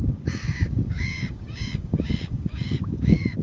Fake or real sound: fake